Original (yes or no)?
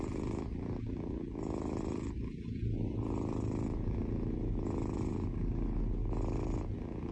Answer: yes